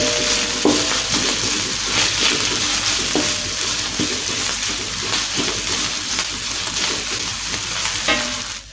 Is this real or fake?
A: real